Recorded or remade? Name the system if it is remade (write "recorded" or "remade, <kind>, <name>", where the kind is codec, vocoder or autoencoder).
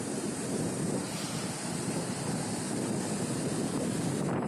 recorded